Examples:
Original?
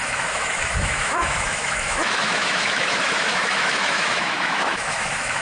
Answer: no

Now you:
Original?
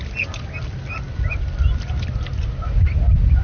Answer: yes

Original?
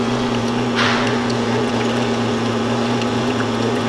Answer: no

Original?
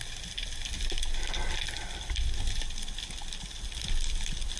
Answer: yes